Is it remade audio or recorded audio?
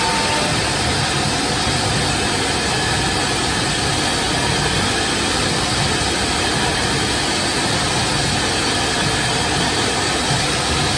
recorded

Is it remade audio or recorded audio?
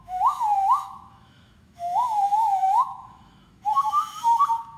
remade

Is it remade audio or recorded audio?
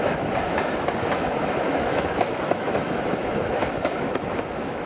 remade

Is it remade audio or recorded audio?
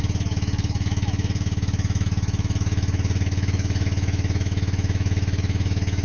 remade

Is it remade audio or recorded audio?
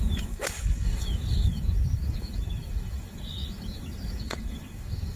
remade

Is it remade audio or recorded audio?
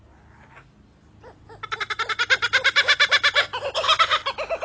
recorded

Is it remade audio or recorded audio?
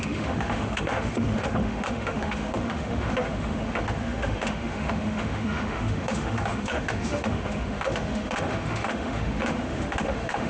remade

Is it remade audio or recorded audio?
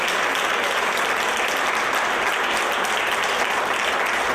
recorded